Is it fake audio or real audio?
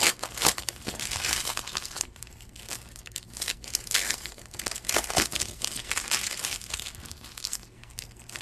fake